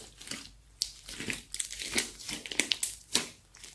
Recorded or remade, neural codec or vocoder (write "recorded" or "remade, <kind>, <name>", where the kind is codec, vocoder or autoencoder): recorded